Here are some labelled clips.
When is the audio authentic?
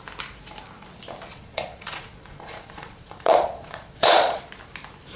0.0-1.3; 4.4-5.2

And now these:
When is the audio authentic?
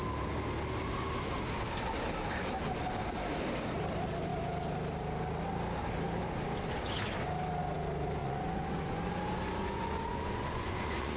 0.0-8.2; 9.1-9.6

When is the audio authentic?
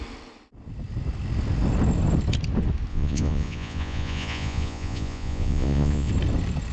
0.0-2.9; 6.1-6.7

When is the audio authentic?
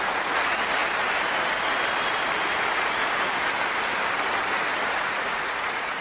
0.8-2.8; 3.4-5.1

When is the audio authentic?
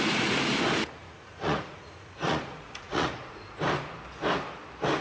0.0-1.0; 3.4-5.0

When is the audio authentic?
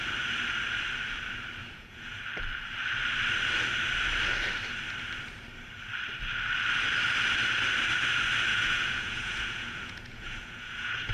0.0-1.6; 2.2-8.5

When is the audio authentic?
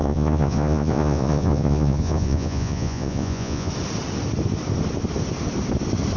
3.7-6.2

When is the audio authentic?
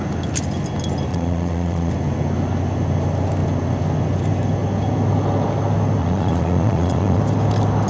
0.0-1.1; 1.9-6.0; 7.2-7.9